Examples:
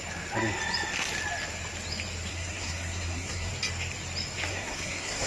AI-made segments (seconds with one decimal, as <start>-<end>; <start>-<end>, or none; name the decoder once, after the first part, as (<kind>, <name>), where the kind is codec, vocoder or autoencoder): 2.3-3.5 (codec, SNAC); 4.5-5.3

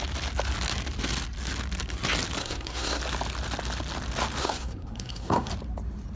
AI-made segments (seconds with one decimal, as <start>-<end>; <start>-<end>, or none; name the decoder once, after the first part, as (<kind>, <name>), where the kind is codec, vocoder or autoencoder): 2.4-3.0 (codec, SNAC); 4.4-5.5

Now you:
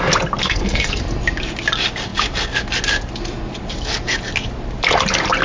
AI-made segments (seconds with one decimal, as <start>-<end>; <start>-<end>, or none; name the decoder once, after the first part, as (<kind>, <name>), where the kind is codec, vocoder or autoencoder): 0.4-1.0 (codec, SNAC)

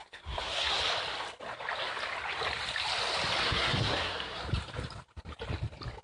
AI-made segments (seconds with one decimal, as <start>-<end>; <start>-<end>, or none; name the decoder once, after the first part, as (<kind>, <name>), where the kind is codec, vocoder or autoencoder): 0.0-0.8 (codec, SNAC); 3.4-4.4

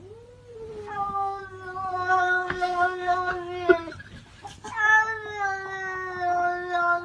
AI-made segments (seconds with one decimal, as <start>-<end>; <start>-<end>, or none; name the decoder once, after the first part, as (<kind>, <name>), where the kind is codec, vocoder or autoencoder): 0.8-1.4 (codec, SNAC); 1.9-3.3